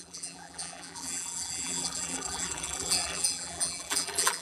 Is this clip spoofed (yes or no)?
yes